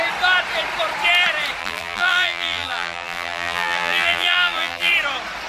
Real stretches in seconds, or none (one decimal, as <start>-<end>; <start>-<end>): 0.0-1.6; 4.9-5.5